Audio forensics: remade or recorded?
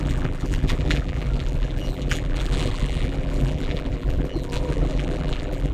remade